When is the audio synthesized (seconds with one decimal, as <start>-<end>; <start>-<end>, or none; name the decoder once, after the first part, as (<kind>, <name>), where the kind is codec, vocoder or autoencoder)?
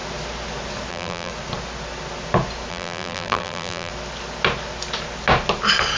0.9-1.3 (vocoder, BigVGAN v2); 2.7-3.9